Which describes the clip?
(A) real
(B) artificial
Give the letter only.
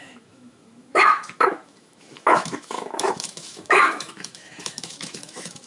B